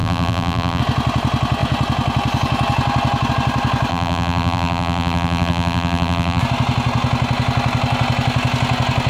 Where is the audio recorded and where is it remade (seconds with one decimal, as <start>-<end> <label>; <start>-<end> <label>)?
0.0-0.8 remade; 0.8-3.9 recorded; 3.9-6.4 remade; 6.4-9.1 recorded

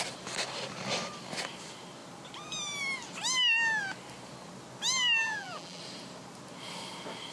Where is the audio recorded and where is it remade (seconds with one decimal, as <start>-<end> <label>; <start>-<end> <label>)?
0.0-5.2 recorded; 5.2-5.8 remade; 5.8-7.3 recorded

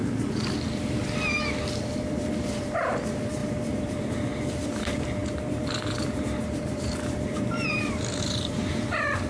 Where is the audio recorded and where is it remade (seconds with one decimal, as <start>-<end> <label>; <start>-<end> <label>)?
0.0-1.0 remade; 1.0-1.8 recorded; 1.8-9.3 remade

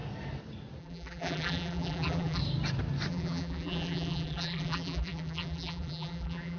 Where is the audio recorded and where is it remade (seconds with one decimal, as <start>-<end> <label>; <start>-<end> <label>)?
0.0-0.8 recorded; 0.8-2.4 remade; 2.4-3.1 recorded; 3.1-6.6 remade

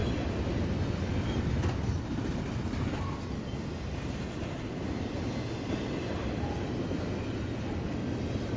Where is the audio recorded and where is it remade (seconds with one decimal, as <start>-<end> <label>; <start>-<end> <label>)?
0.0-0.6 remade; 0.6-8.6 recorded

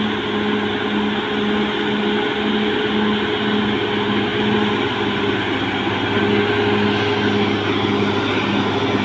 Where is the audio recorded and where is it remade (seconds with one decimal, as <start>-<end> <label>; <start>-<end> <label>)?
0.0-9.0 recorded